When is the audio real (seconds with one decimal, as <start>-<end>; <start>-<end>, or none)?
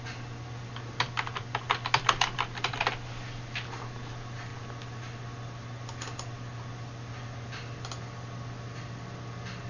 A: 0.0-9.7